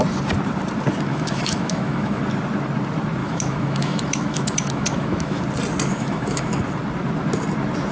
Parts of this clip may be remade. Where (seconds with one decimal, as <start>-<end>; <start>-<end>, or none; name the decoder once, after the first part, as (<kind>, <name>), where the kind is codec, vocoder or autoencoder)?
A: 1.1-2.2 (autoencoder, DAC-VAE); 3.2-5.4; 5.9-6.6